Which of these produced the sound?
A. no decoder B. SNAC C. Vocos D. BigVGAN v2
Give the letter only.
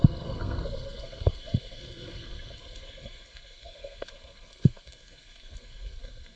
B